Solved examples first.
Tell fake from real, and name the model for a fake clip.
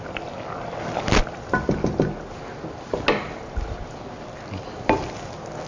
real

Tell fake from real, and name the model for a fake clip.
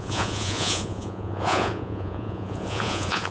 fake, vocoder, Vocos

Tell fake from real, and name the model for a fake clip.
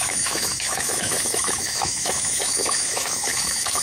fake, autoencoder, DAC-VAE